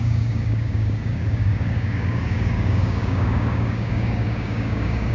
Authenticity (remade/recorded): remade